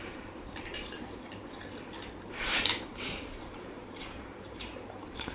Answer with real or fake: fake